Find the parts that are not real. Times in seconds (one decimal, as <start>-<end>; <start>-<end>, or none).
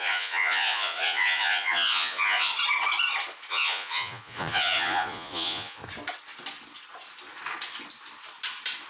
0.0-2.5; 3.5-5.8